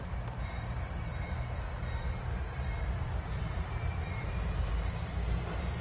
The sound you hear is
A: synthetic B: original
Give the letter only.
A